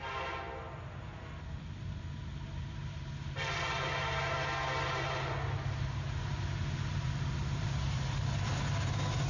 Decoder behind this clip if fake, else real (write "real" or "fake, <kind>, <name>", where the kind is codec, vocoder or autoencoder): real